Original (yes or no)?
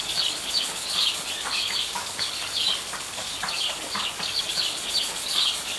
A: no